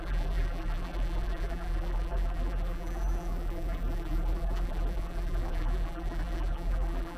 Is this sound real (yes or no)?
no